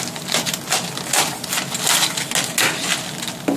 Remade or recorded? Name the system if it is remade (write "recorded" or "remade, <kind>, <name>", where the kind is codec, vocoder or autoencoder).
recorded